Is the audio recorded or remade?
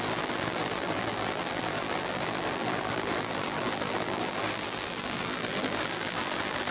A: remade